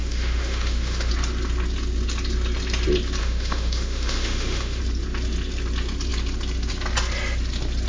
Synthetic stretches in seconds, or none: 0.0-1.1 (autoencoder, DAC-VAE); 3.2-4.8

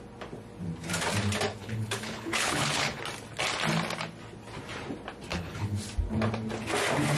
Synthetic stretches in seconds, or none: 1.6-3.0 (codec, HILCodec); 5.3-5.8

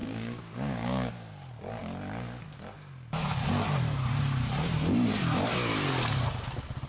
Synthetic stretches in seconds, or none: 0.0-1.1 (codec, DAC)

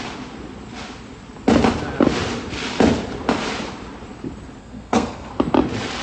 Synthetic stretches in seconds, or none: 4.6-5.3 (codec, SNAC)

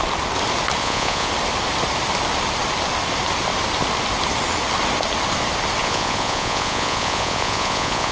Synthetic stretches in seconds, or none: 0.8-1.3 (vocoder, Vocos); 5.8-8.1

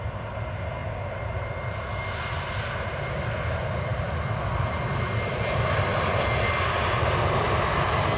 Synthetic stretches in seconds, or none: none

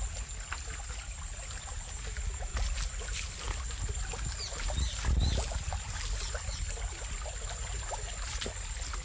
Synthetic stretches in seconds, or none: none